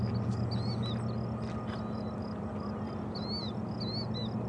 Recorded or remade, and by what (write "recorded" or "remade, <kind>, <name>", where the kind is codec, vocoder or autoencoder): recorded